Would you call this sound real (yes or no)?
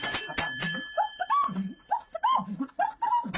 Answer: yes